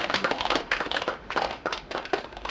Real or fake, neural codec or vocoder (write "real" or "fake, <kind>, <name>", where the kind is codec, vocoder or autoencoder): fake, autoencoder, DAC-VAE